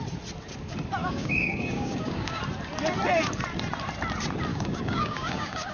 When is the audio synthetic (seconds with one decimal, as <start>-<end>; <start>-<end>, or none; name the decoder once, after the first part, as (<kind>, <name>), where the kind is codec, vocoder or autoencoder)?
1.0-2.4 (codec, DAC); 4.5-5.7